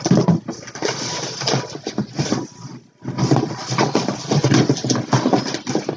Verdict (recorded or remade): recorded